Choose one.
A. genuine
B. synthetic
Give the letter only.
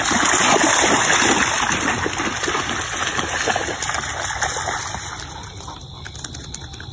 A